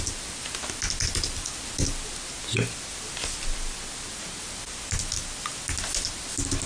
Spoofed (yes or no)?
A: no